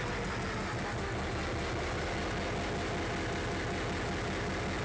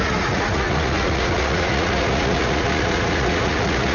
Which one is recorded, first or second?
first